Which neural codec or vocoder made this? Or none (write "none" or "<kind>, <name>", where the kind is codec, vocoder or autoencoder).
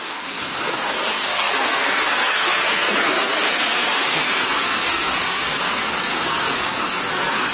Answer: codec, SNAC